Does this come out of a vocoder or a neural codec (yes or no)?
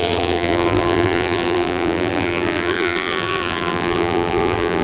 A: yes